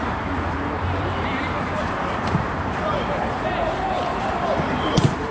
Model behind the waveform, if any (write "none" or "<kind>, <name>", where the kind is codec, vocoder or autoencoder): vocoder, BigVGAN v2